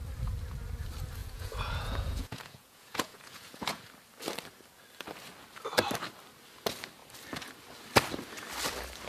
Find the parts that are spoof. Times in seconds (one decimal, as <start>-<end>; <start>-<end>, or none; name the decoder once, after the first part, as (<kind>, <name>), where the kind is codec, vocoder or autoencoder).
1.2-3.8 (vocoder, Vocos)